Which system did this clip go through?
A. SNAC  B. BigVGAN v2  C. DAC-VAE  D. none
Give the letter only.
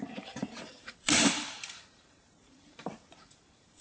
B